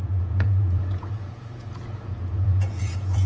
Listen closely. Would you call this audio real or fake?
fake